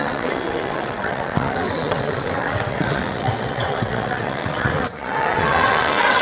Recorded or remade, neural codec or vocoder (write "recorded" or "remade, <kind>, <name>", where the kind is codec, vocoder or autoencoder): remade, vocoder, WaveNeXt